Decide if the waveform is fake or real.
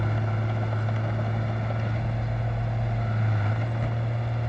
real